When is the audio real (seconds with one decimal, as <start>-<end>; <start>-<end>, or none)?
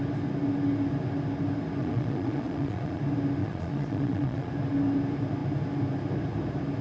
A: 0.0-1.8; 3.0-3.4; 4.5-6.8